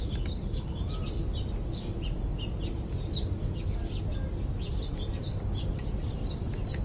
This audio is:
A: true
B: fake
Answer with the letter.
A